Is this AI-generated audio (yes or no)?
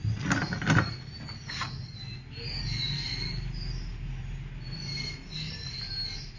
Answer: no